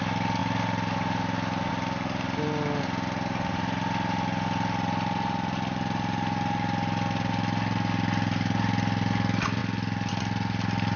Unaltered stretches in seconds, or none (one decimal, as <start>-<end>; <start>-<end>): 0.0-11.0